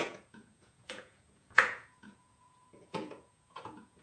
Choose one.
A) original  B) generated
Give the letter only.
B